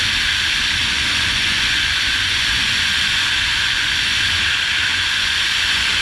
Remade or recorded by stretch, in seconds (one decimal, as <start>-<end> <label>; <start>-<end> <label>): 0.0-0.8 recorded; 0.8-4.4 remade; 4.4-4.9 recorded; 4.9-6.0 remade